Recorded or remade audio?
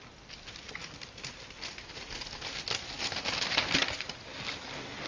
recorded